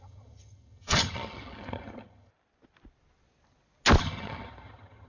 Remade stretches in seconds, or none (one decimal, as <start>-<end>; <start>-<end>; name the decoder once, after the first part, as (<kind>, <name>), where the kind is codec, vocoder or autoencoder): 0.0-2.3 (vocoder, HiFi-GAN); 4.0-5.1